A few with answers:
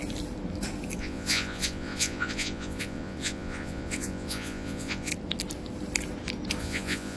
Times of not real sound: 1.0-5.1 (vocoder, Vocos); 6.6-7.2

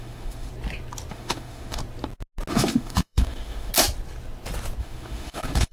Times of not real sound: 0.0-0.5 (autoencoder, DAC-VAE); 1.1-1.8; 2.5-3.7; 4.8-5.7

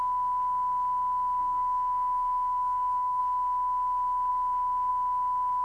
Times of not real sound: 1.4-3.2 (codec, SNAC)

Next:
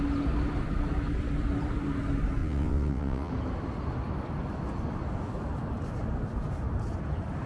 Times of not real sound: 2.4-3.3 (vocoder, WaveNeXt)

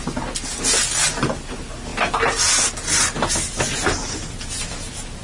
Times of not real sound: none

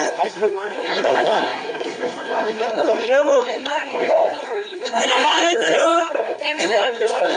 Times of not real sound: 0.0-7.4 (codec, SNAC)